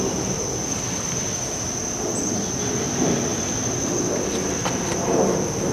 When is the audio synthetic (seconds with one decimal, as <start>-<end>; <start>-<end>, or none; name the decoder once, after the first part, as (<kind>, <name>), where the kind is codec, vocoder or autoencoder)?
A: none